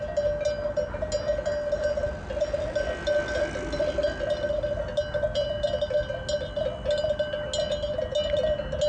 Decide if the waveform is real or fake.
real